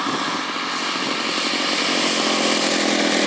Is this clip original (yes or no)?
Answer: yes